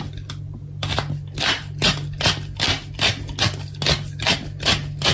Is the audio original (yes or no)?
yes